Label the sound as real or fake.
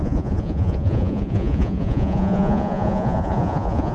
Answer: fake